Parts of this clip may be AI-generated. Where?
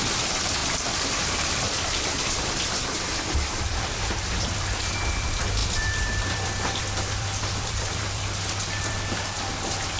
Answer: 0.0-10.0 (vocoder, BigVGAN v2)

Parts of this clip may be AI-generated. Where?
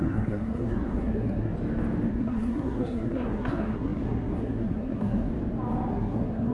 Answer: 0.0-1.5 (codec, SNAC); 2.1-5.3; 5.9-6.5